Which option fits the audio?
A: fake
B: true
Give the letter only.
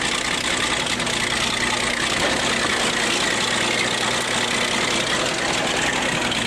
B